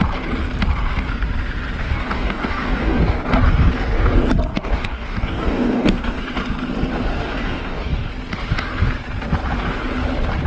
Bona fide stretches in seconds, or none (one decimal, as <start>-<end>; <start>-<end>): 0.0-1.8; 3.0-4.5; 6.2-7.1; 8.1-10.5